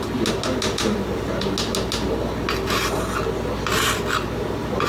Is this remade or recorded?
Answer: recorded